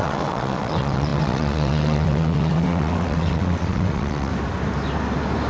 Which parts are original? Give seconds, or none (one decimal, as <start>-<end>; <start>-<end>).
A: 4.3-5.5